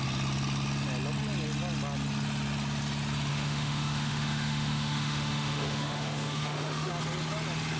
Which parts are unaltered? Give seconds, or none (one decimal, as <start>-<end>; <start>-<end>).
0.0-3.3; 6.9-7.8